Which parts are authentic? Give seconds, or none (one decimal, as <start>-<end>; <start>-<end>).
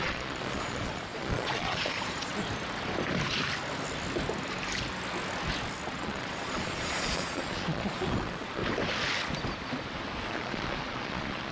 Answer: 2.3-5.9; 8.6-10.3